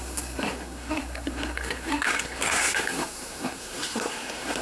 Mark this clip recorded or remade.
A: remade